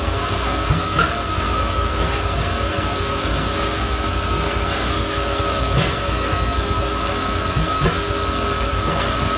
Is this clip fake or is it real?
fake